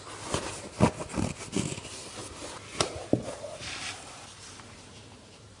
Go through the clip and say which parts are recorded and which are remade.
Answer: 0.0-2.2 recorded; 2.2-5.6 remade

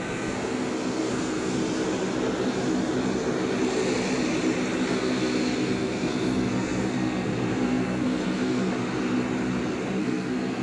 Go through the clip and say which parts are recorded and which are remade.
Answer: 0.0-1.6 remade; 1.6-4.9 recorded; 4.9-8.7 remade; 8.7-10.0 recorded; 10.0-10.6 remade

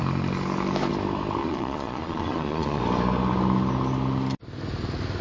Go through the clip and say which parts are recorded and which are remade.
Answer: 0.0-1.4 recorded; 1.4-2.8 remade; 2.8-5.2 recorded